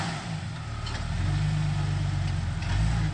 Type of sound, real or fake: real